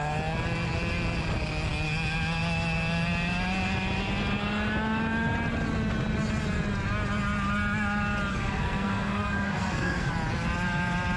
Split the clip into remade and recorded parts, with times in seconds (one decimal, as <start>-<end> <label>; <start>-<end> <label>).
0.0-8.3 recorded; 8.3-10.1 remade; 10.1-11.2 recorded